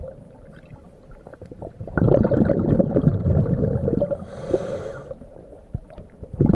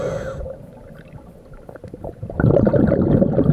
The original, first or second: second